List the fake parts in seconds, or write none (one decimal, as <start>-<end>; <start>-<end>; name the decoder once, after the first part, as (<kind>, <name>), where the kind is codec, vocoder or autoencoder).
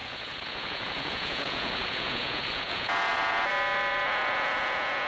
0.0-5.1 (vocoder, Vocos)